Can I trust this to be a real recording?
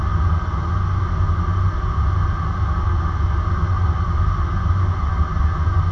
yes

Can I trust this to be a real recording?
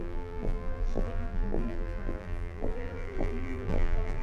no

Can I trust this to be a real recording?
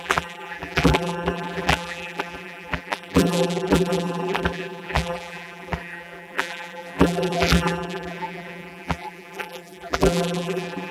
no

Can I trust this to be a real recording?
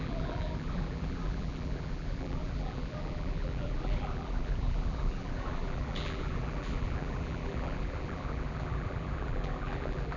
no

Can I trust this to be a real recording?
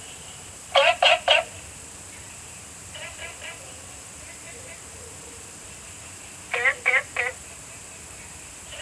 no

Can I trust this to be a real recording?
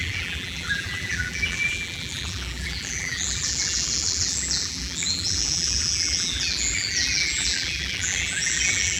no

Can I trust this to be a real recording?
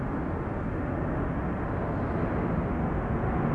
yes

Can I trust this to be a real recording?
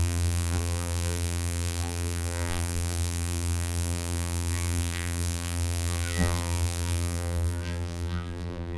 no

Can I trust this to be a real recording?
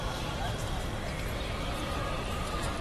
no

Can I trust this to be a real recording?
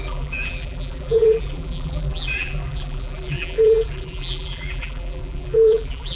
no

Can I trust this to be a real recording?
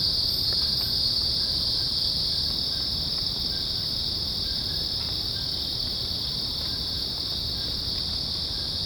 yes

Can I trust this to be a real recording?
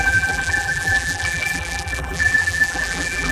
no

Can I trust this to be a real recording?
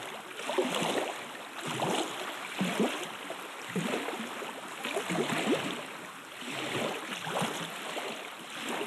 yes